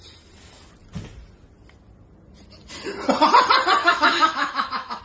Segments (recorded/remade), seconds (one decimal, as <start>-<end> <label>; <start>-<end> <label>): 0.0-3.8 recorded; 3.8-5.0 remade